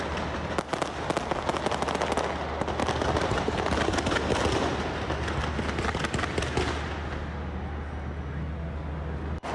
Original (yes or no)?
yes